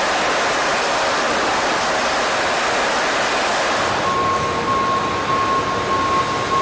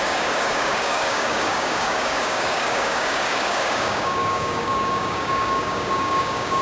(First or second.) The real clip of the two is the first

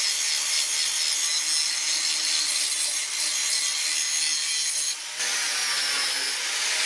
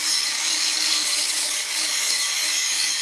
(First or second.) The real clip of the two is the first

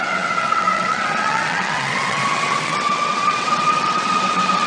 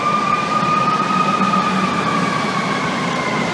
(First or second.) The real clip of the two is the second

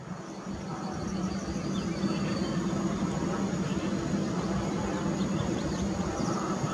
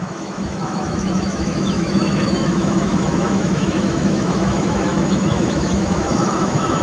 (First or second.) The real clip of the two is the first